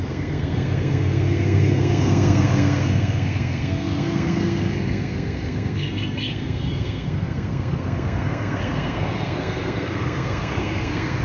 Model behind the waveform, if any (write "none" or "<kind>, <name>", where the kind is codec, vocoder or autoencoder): codec, SNAC